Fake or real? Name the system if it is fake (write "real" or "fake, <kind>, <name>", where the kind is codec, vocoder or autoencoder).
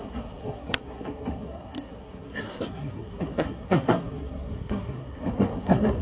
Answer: fake, codec, SNAC